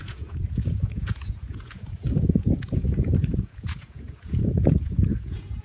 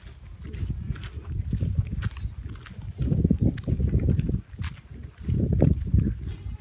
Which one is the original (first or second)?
second